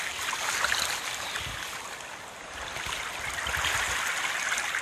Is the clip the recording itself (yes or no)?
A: yes